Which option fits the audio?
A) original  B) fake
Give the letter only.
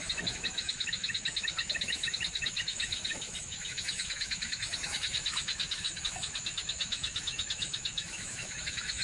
B